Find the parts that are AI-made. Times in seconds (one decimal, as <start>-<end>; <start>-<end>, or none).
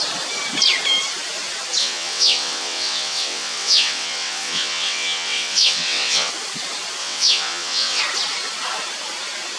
1.8-6.3; 7.0-8.0